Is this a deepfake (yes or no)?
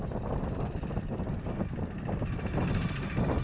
no